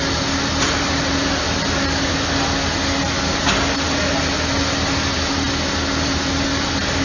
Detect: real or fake real